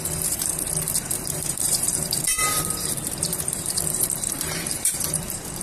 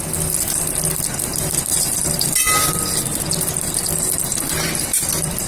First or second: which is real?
second